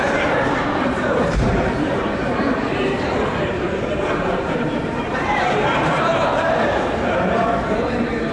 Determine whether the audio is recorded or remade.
remade